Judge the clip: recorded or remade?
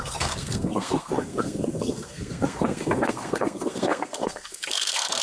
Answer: remade